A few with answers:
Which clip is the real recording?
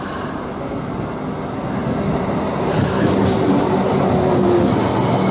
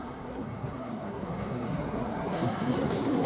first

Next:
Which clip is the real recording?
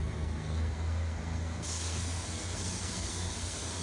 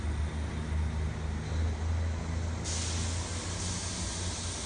second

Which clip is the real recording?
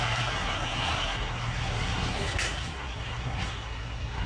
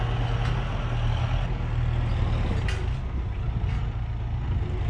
second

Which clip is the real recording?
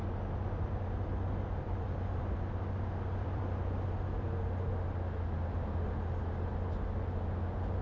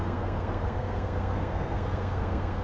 first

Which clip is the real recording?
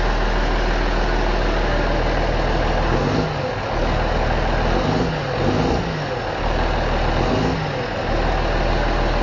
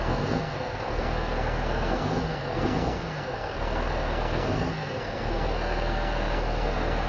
first